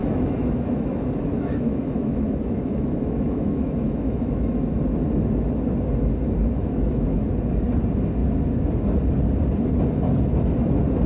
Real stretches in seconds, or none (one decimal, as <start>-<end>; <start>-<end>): 4.7-6.4; 7.2-11.1